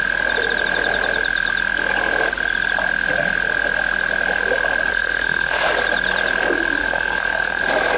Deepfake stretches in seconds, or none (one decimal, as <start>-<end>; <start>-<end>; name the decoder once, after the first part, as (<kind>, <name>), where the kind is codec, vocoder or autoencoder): 4.9-5.7 (codec, SNAC); 6.8-7.6